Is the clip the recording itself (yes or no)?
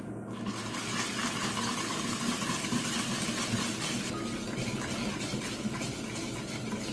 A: yes